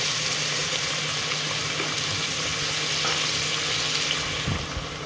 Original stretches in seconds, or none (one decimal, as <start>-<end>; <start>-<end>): 2.5-4.6